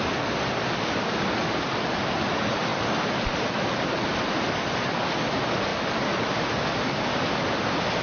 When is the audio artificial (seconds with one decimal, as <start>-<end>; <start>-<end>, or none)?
none